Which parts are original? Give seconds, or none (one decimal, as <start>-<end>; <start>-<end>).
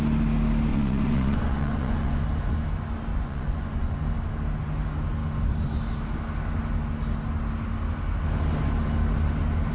0.0-0.7; 2.2-3.1; 4.0-9.7